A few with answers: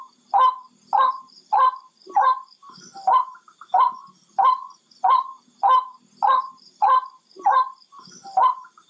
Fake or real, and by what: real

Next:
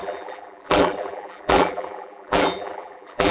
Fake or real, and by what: fake, vocoder, BigVGAN v2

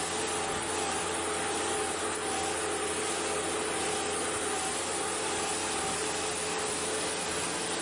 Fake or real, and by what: real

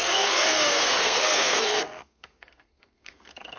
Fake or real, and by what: fake, codec, SNAC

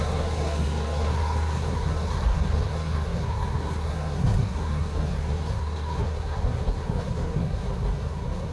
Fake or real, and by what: fake, codec, SNAC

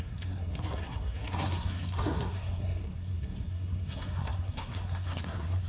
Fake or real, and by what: fake, codec, SNAC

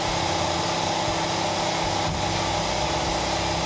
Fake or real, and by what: real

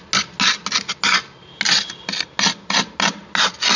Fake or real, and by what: real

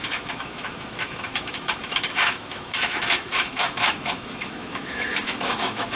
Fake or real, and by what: fake, autoencoder, DAC-VAE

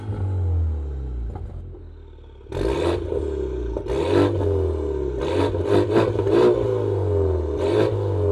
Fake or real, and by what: real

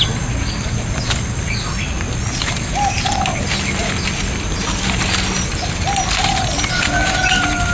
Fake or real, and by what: real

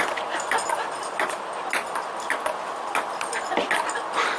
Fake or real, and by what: real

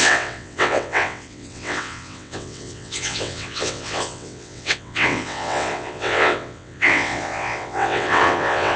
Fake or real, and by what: fake, vocoder, WaveNeXt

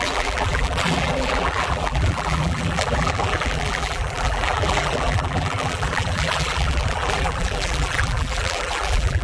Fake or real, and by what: fake, vocoder, BigVGAN v2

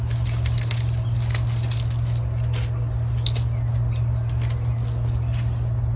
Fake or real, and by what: real